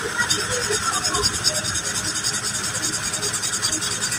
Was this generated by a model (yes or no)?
no